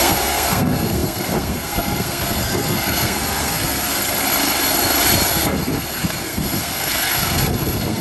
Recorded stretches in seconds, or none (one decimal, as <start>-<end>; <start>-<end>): 4.0-5.3